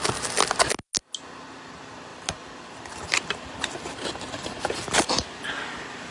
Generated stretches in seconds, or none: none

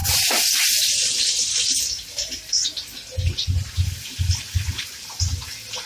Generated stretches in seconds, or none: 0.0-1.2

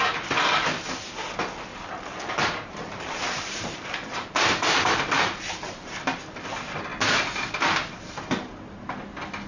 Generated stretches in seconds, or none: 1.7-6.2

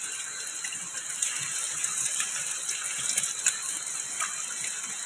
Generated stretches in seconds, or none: none

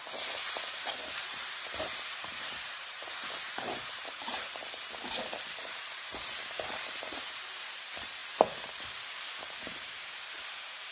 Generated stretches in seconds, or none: 0.0-4.6; 5.6-8.2; 9.4-10.9

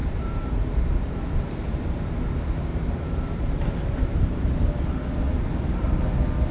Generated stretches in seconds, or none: 0.0-1.1; 2.7-5.0; 5.5-6.1